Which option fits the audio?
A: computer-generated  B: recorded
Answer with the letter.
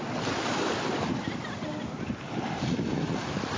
B